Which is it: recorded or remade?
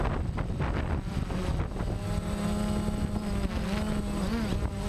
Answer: recorded